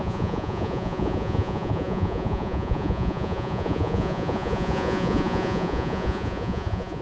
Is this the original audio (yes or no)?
no